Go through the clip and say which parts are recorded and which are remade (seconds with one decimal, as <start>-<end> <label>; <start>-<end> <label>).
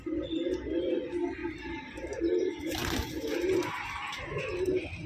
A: 0.0-1.4 recorded; 1.4-2.2 remade; 2.2-5.1 recorded